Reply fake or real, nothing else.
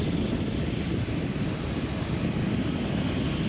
real